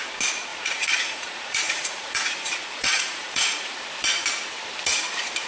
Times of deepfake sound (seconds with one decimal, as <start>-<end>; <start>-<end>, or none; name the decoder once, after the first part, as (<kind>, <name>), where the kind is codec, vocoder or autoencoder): 0.5-3.8 (vocoder, Vocos)